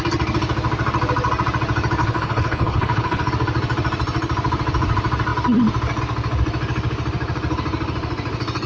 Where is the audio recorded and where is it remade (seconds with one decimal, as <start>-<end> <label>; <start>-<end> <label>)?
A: 0.0-2.0 recorded; 2.0-3.3 remade; 3.3-8.7 recorded